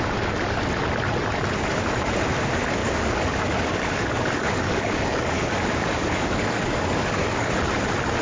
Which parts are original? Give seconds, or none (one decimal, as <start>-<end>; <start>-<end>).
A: 0.0-2.8; 7.5-8.2